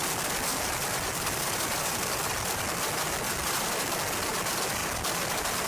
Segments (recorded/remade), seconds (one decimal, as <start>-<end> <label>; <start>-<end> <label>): 0.0-0.5 recorded; 0.5-3.9 remade; 3.9-4.8 recorded; 4.8-5.7 remade